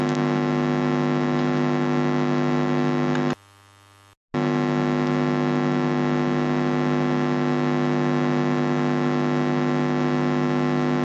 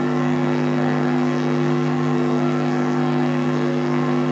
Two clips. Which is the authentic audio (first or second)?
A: first